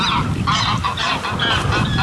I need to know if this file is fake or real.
real